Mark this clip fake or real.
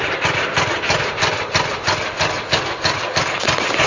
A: real